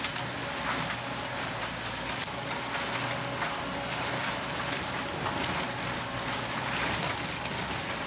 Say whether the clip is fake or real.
real